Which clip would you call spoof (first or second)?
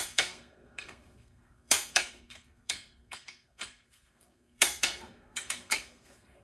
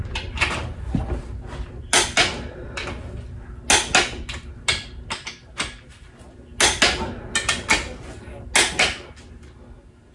first